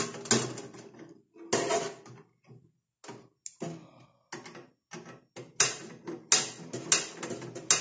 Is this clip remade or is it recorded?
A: recorded